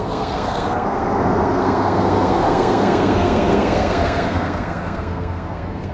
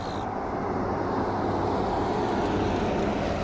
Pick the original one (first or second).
second